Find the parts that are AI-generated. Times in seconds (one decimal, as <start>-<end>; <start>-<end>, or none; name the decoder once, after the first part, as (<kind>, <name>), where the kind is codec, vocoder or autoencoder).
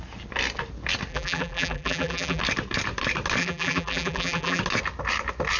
1.1-2.4 (vocoder, BigVGAN v2); 3.4-4.6